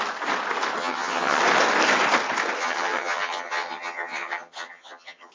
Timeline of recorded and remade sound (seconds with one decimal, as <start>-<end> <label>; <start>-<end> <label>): 0.0-0.8 recorded; 0.8-1.4 remade; 1.4-2.6 recorded; 2.6-5.3 remade